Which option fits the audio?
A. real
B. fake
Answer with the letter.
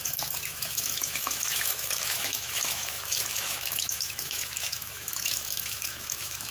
B